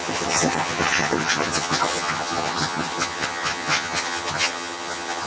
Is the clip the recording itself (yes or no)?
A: no